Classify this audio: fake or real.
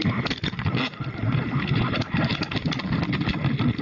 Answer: real